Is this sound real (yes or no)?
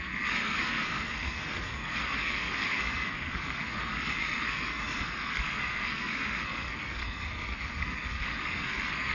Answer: no